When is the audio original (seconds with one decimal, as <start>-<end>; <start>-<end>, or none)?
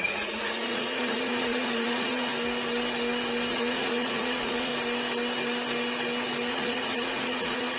2.3-3.5; 4.7-6.5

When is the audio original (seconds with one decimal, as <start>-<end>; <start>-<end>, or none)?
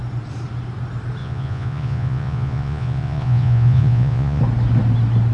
0.0-1.2; 4.4-5.3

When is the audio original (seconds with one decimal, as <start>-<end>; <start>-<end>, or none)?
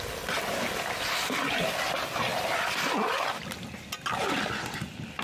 0.0-5.2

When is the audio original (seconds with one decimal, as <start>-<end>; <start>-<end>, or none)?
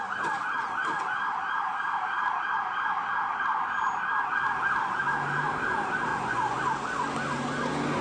0.0-6.1; 6.6-8.0